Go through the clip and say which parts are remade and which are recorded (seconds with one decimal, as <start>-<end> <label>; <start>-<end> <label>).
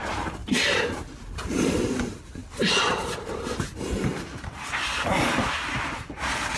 0.0-6.6 recorded